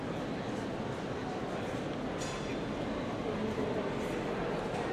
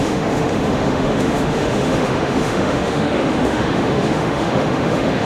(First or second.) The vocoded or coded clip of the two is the second